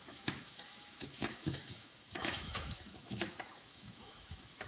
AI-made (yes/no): yes